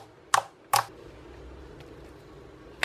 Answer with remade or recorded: recorded